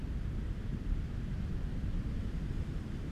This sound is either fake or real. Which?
real